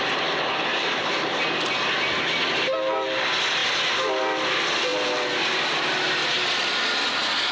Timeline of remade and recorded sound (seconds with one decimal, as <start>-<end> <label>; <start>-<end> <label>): 0.0-0.7 recorded; 0.7-1.3 remade; 1.3-7.5 recorded